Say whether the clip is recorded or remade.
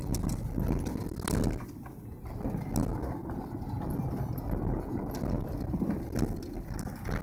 recorded